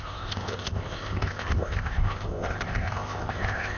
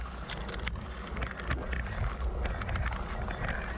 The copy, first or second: first